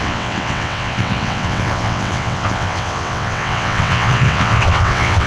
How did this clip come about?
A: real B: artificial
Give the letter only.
B